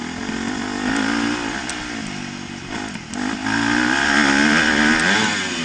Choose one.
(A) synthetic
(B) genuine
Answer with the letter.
B